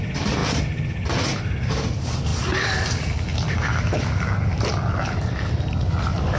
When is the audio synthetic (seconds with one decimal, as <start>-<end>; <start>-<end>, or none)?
none